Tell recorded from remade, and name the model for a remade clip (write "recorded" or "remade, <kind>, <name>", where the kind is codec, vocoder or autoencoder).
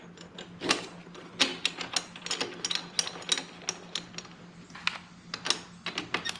recorded